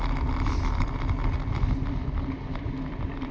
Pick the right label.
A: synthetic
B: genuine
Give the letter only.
B